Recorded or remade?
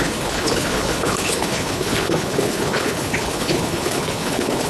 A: remade